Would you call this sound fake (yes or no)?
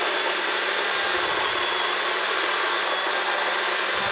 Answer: no